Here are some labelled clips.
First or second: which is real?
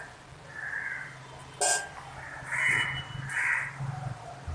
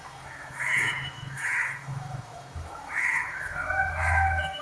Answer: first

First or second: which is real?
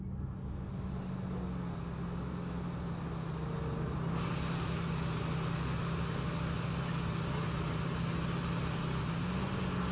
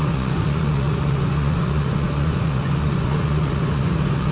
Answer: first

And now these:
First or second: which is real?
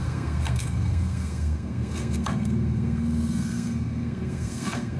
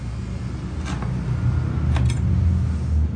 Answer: second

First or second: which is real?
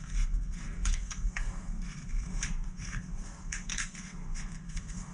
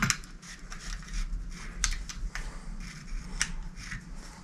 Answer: second